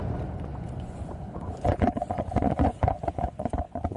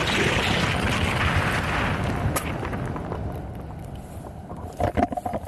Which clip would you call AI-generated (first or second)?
first